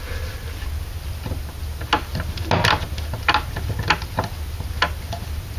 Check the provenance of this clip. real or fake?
real